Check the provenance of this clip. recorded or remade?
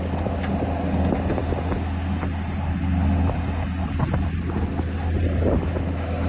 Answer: recorded